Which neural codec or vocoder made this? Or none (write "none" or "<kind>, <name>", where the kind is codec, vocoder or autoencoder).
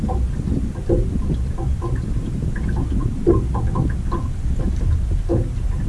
none